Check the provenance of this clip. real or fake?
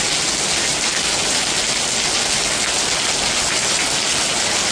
real